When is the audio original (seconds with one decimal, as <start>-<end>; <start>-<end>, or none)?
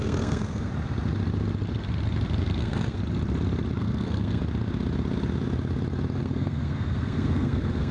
0.7-2.6; 3.0-3.8; 4.4-6.2